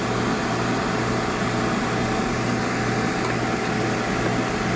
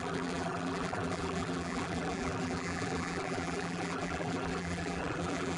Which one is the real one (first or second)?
first